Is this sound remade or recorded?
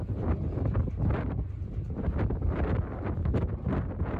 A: recorded